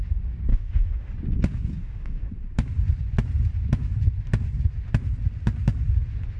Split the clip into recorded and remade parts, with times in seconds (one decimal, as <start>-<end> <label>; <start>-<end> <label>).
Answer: 0.0-0.5 recorded; 0.5-1.1 remade; 1.1-1.8 recorded; 1.8-2.3 remade; 2.3-6.4 recorded